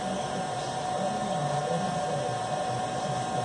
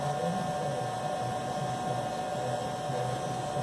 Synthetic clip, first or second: first